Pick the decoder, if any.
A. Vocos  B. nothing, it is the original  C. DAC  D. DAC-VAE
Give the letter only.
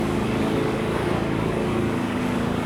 C